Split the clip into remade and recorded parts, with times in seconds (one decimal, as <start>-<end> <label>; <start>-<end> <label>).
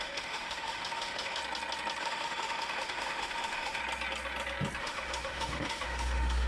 0.0-1.4 remade; 1.4-2.0 recorded; 2.0-3.8 remade; 3.8-4.8 recorded; 4.8-6.5 remade